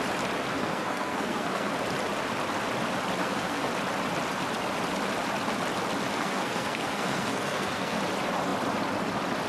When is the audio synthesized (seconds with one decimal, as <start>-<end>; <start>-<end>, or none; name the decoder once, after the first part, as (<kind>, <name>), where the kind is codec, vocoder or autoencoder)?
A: 0.5-1.7 (codec, SNAC); 3.2-3.7; 6.1-8.0